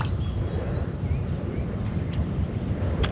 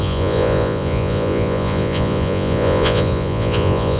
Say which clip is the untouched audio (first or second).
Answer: first